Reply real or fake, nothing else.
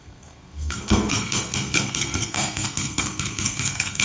fake